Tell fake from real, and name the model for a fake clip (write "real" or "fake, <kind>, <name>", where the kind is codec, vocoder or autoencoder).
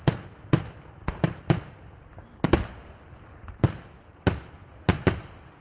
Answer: real